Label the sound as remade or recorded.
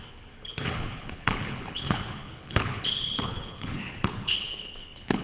remade